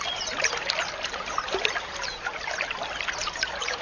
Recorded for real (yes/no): yes